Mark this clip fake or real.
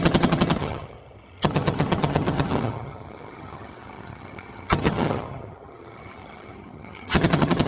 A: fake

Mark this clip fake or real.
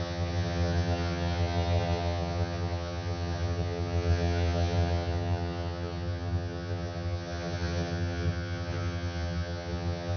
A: fake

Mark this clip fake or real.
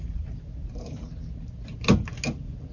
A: real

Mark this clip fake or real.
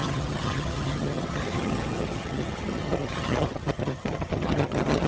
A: fake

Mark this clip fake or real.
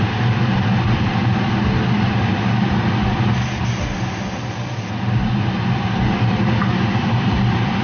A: real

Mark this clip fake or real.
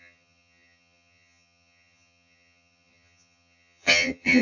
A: fake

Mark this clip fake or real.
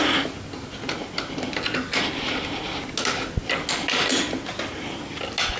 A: real